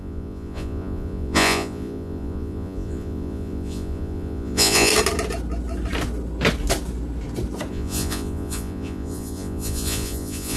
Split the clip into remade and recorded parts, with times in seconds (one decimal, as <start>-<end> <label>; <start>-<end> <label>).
0.0-4.9 remade; 4.9-7.7 recorded; 7.7-10.6 remade